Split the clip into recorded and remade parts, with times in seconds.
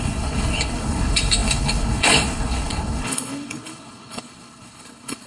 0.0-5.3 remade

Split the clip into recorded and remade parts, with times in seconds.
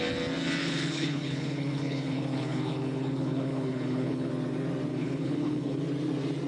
0.0-0.6 recorded; 0.6-4.3 remade; 4.3-4.9 recorded; 4.9-5.8 remade; 5.8-6.5 recorded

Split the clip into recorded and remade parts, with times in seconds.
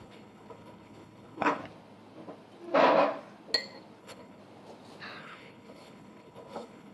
0.0-1.6 remade; 1.6-4.0 recorded; 4.0-4.4 remade; 4.4-5.2 recorded; 5.2-6.9 remade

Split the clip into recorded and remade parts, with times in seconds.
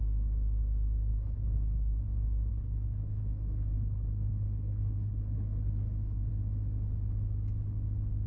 0.0-1.1 recorded; 1.1-2.0 remade; 2.0-2.5 recorded; 2.5-6.3 remade; 6.3-8.3 recorded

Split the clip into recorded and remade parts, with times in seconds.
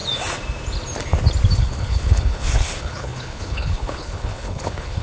0.0-1.6 recorded; 1.6-5.0 remade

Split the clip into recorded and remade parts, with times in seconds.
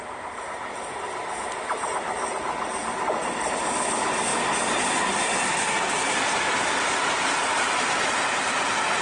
0.0-9.0 recorded